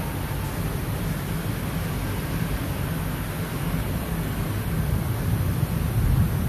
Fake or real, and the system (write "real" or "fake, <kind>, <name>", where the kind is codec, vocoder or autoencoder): real